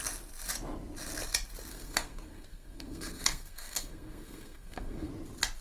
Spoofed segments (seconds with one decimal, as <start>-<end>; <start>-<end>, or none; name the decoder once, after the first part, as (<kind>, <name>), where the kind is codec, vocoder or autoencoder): 1.7-5.1 (codec, SNAC)